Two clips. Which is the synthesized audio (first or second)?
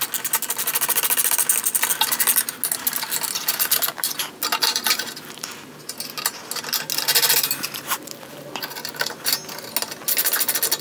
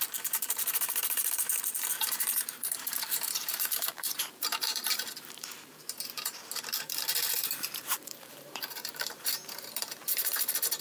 second